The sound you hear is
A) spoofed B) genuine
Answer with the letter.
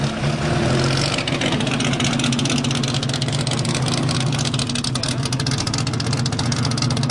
B